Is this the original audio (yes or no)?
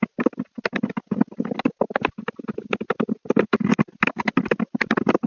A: yes